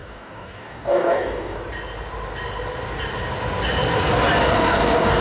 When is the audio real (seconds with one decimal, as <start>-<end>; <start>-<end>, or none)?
1.6-4.4